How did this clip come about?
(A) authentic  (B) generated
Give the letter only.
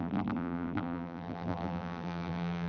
B